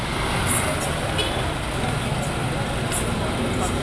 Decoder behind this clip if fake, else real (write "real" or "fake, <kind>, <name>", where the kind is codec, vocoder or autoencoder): real